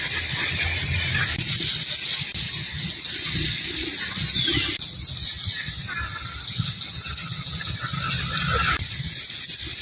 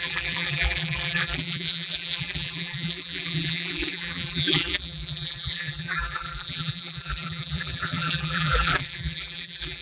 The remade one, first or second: second